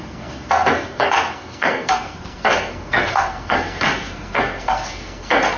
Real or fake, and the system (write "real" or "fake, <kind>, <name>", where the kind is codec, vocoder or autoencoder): fake, codec, SNAC